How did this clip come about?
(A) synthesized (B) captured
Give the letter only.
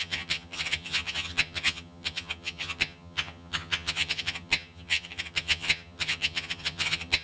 A